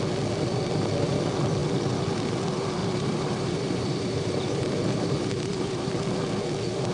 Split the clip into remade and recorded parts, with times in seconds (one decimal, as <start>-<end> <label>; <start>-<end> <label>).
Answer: 0.0-2.8 recorded; 2.8-6.0 remade; 6.0-6.9 recorded